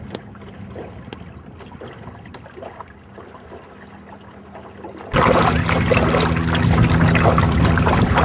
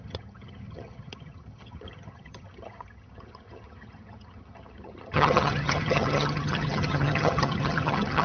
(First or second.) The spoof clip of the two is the second